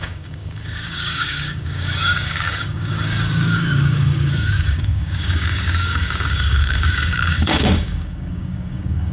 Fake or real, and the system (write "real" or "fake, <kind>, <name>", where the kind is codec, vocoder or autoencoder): fake, codec, DAC